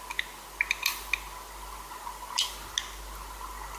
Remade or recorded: recorded